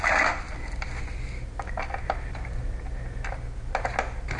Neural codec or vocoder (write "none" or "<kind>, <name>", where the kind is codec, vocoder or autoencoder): none